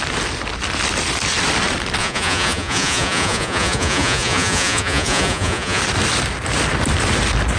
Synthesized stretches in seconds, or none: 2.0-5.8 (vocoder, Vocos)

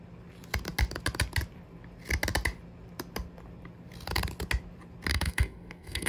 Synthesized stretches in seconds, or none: 5.1-6.1 (codec, SNAC)

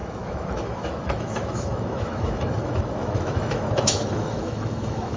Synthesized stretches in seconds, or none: 0.0-5.2 (autoencoder, DAC-VAE)

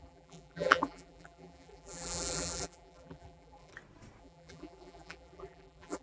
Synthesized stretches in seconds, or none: 0.0-3.7 (vocoder, BigVGAN v2); 4.2-6.0